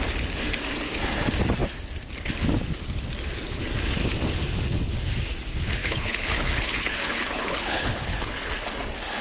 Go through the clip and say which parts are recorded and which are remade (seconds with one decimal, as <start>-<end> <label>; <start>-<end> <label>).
0.0-5.8 recorded; 5.8-8.5 remade; 8.5-9.2 recorded